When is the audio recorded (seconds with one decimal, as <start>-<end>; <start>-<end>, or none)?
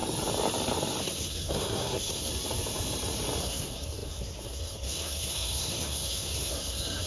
0.0-1.0; 2.3-3.4